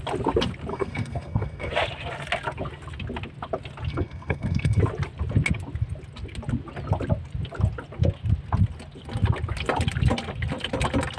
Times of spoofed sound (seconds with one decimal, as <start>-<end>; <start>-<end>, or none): 0.7-1.7; 3.9-4.8